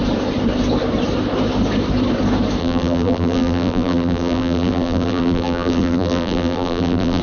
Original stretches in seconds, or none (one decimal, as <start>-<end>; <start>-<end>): 0.0-2.6

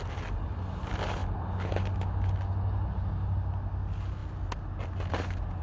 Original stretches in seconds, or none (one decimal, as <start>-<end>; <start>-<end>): 0.0-5.6

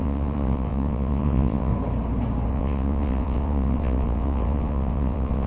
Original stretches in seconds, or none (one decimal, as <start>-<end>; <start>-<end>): 1.7-2.5

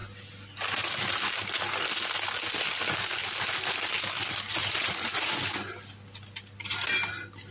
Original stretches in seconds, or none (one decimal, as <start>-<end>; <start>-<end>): 0.0-4.6; 5.3-7.5

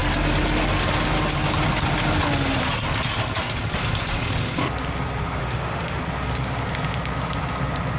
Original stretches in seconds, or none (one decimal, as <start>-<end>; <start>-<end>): 0.0-5.4; 6.0-8.0